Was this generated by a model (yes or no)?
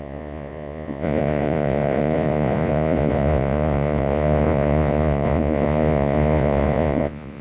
yes